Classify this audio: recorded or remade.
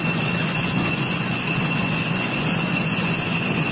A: remade